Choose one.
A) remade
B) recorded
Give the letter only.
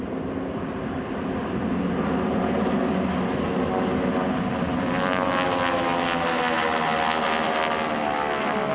B